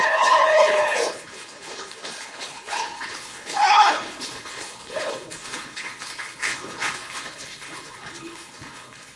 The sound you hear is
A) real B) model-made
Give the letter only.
B